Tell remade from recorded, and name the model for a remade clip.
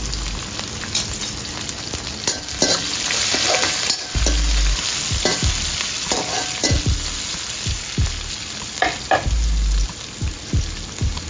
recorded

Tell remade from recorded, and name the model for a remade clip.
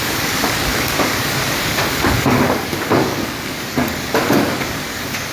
remade, codec, DAC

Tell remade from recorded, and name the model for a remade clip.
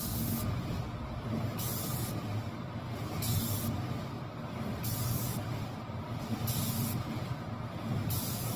recorded